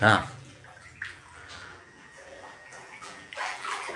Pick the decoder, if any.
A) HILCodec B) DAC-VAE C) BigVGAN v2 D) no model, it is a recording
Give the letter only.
C